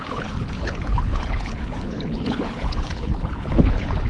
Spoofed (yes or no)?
yes